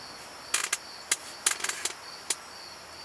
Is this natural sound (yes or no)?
yes